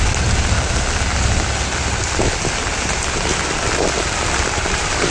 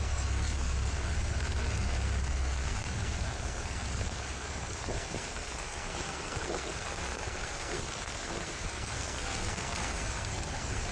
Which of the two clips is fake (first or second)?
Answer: second